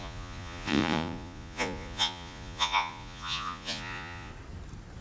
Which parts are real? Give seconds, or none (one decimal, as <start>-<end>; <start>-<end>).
4.3-5.0